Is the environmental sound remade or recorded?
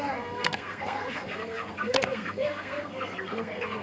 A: remade